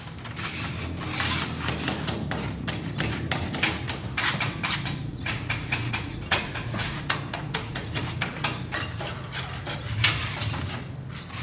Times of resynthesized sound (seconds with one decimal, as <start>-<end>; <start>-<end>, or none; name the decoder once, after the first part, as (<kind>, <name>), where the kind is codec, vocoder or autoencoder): 5.1-8.0 (vocoder, Vocos)